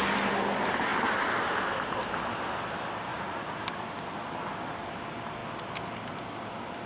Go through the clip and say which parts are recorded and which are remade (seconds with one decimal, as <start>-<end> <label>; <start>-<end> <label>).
0.0-3.1 recorded; 3.1-3.6 remade; 3.6-6.9 recorded